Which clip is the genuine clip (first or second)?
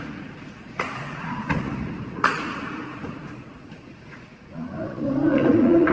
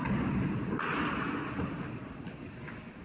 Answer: second